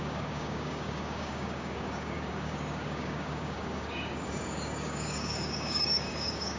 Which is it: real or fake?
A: fake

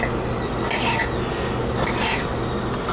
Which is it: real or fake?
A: real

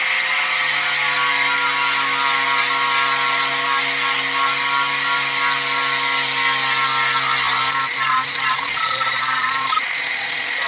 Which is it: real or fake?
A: real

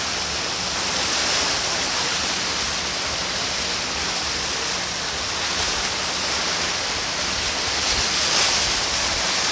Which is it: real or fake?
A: real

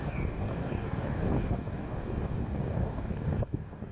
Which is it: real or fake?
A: fake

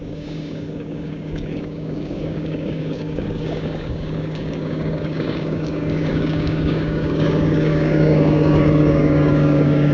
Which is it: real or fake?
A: fake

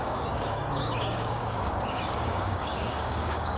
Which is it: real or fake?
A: fake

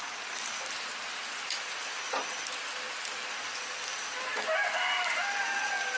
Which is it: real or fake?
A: real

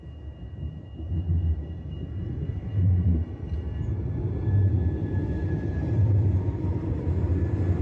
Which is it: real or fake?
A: real